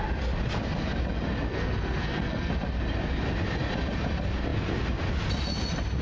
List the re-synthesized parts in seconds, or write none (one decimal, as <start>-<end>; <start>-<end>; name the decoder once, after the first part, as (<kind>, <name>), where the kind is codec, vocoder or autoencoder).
1.5-2.5 (codec, SNAC)